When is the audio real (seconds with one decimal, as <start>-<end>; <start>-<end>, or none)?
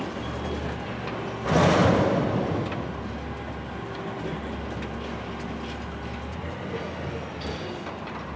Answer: 0.0-8.4